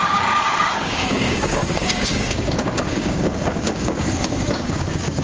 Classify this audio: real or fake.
fake